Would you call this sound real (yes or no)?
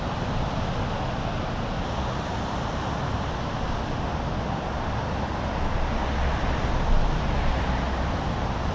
yes